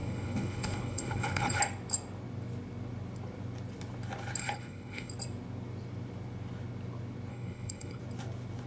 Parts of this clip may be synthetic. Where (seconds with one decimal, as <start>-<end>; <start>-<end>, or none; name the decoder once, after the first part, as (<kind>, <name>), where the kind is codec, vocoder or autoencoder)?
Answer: 0.0-1.6 (codec, HILCodec); 4.4-5.1; 7.3-8.0